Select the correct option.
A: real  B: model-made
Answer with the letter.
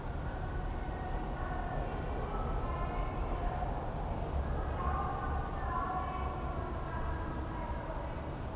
A